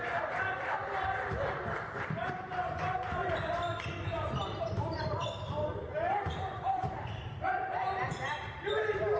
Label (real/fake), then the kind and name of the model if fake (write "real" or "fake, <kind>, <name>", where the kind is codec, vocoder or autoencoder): fake, vocoder, BigVGAN v2